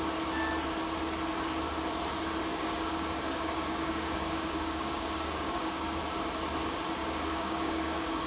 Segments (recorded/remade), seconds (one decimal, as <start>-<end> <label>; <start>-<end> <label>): 0.0-2.5 recorded; 2.5-6.0 remade; 6.0-7.0 recorded; 7.0-8.3 remade